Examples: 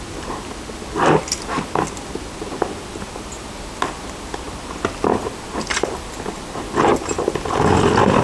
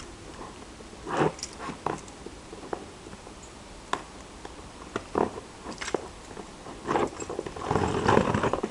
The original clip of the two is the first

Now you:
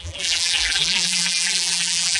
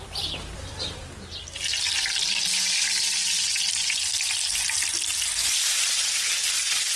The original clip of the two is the second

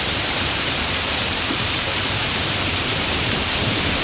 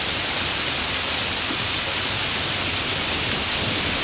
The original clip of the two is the second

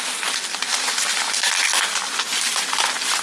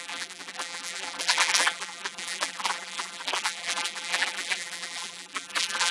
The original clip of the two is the first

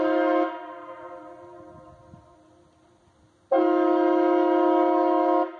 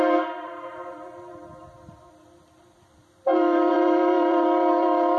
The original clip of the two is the first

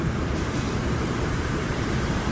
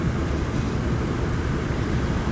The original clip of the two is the second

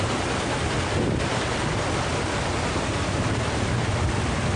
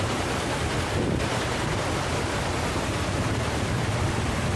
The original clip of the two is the first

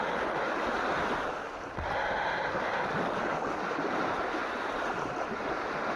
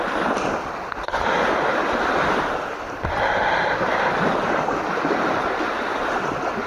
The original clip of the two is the first